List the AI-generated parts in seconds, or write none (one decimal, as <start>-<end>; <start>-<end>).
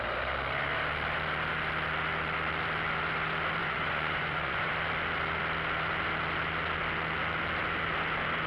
3.6-4.7